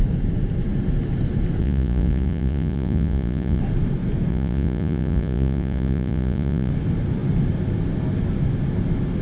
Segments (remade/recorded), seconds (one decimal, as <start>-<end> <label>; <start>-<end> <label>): 0.0-1.6 recorded; 1.6-3.6 remade; 3.6-4.3 recorded; 4.3-6.7 remade; 6.7-9.2 recorded